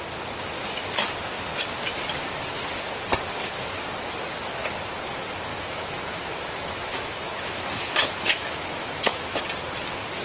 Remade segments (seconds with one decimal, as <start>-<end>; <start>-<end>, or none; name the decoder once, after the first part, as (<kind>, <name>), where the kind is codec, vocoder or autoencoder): 5.5-9.4 (autoencoder, DAC-VAE)